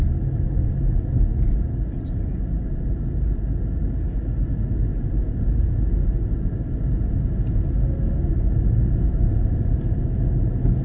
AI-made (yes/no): no